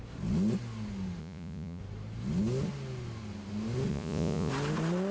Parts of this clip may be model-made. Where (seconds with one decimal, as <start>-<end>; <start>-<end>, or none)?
1.2-1.8; 3.9-4.5